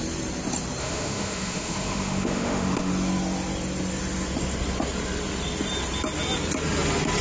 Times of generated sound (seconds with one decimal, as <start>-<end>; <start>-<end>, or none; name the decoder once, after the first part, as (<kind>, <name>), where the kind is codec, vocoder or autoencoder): 0.8-2.9 (autoencoder, DAC-VAE)